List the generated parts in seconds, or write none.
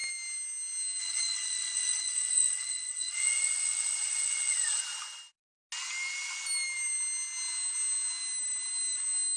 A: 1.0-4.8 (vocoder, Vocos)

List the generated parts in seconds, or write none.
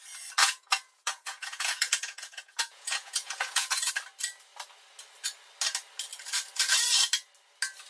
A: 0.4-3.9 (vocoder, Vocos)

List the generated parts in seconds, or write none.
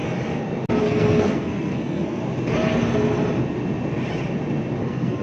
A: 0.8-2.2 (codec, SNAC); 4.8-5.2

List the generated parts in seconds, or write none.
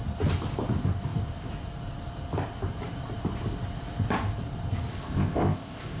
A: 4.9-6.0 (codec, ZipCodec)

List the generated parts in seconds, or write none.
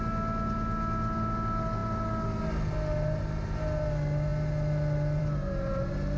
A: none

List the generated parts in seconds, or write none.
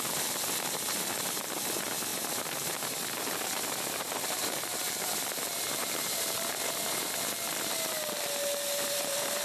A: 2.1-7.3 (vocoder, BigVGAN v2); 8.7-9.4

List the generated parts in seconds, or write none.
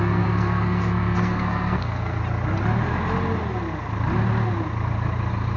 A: 0.0-2.2 (codec, SNAC)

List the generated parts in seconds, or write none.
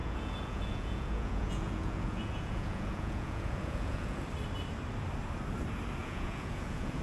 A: 0.0-4.2 (vocoder, Vocos); 6.0-7.0